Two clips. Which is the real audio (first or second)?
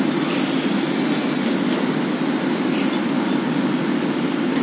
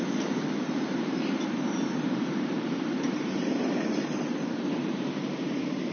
first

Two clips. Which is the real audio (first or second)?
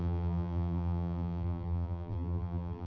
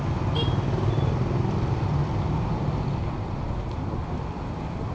second